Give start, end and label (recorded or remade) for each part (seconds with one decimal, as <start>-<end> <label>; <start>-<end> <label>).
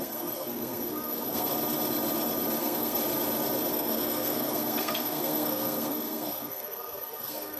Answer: 0.0-1.5 remade; 1.5-2.6 recorded; 2.6-3.0 remade; 3.0-3.7 recorded; 3.7-7.6 remade